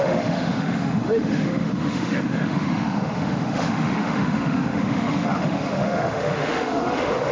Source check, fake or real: fake